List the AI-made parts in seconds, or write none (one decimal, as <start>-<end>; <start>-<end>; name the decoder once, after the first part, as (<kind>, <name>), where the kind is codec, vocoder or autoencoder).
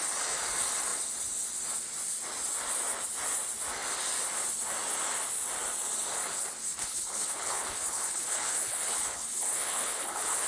6.8-10.5 (codec, HILCodec)